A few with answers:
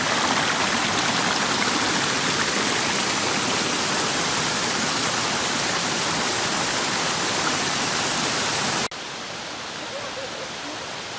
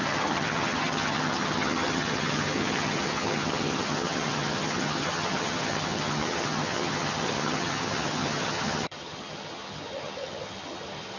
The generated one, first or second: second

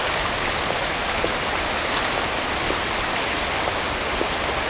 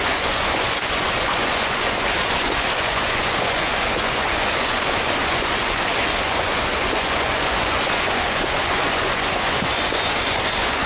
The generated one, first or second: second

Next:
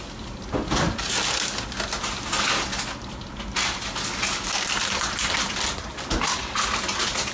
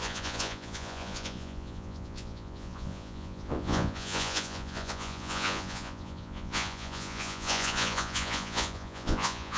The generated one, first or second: second